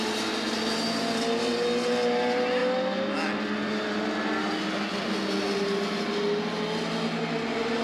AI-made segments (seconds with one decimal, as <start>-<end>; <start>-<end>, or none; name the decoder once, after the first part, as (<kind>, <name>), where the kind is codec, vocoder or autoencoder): none